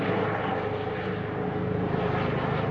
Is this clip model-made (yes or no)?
no